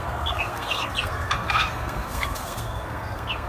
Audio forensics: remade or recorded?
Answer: remade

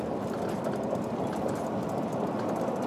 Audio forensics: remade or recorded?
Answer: recorded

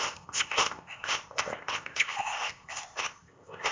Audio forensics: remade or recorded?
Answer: remade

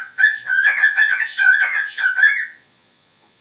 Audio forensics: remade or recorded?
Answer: remade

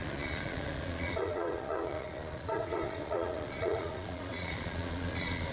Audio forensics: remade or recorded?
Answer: remade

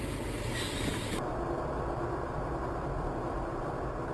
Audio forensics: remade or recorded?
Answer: recorded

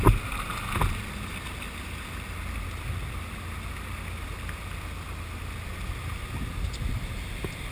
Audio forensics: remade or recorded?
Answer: recorded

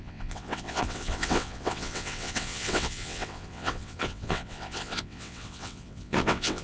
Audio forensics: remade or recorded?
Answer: remade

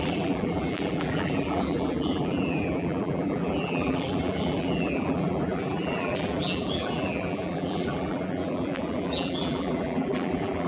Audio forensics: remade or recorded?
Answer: remade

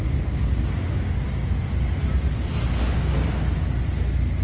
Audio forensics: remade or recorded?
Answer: recorded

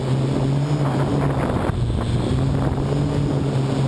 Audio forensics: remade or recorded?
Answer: recorded